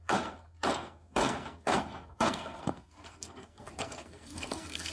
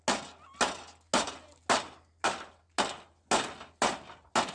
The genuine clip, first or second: second